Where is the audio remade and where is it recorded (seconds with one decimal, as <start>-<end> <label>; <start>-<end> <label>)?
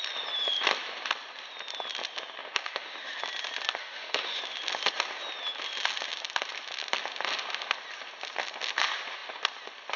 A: 0.0-2.4 recorded; 2.4-3.2 remade; 3.2-3.8 recorded; 3.8-4.4 remade; 4.4-10.0 recorded